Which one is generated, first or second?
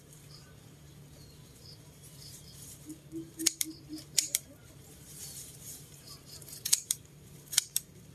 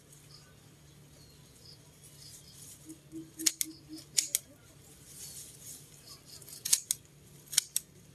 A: first